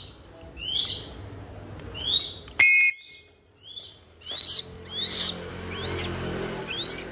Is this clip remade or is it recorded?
recorded